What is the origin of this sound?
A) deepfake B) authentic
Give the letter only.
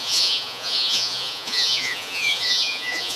A